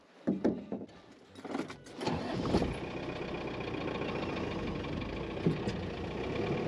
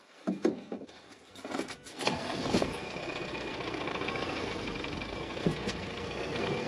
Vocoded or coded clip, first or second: second